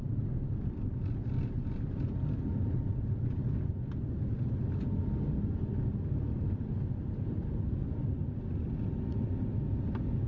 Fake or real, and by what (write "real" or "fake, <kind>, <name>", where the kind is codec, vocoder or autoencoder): real